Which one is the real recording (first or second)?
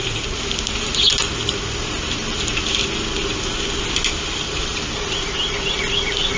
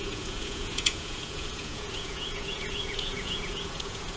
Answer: first